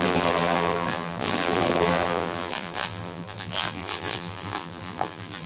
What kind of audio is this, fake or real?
fake